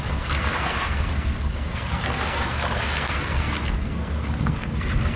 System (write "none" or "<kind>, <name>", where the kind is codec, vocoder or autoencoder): codec, SNAC